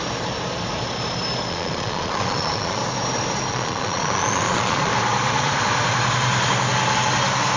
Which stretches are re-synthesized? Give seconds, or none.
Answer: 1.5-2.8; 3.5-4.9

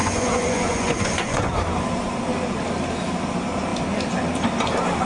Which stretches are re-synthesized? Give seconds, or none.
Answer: 0.0-1.5

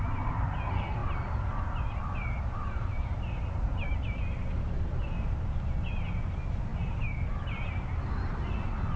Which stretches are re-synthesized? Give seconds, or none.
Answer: none

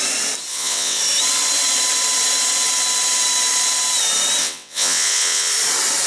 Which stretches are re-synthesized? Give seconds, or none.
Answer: 0.5-1.0; 4.4-5.5

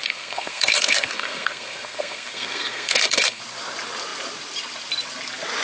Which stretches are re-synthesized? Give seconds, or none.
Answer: 0.0-3.4

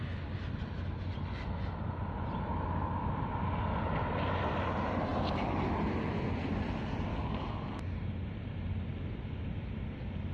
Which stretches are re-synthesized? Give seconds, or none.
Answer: 7.1-7.7